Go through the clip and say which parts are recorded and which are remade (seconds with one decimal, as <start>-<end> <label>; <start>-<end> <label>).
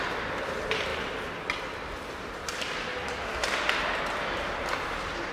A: 0.0-5.3 remade